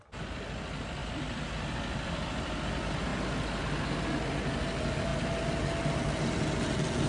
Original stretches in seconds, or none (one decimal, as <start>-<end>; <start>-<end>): 0.0-1.0; 2.5-7.1